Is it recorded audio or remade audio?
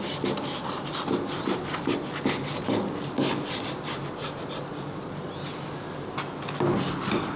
recorded